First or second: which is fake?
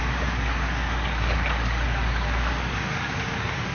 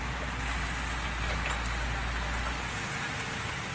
first